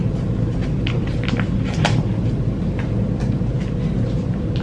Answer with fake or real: real